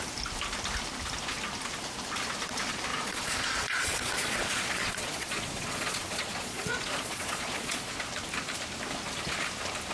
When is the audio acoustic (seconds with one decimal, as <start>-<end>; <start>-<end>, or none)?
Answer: 0.0-2.9; 7.9-9.9

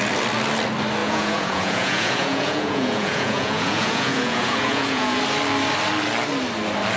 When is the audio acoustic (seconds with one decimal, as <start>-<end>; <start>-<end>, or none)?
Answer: 0.0-1.0; 5.2-7.0